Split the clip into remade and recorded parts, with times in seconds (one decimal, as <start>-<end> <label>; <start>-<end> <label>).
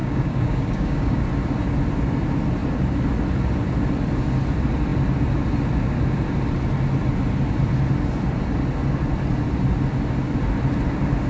0.0-1.2 remade; 1.2-11.3 recorded